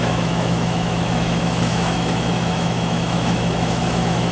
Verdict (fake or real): fake